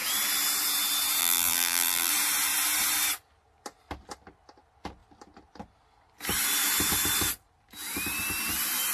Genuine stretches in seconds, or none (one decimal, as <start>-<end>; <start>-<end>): 0.0-1.2; 2.1-8.9